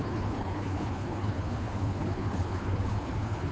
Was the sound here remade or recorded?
remade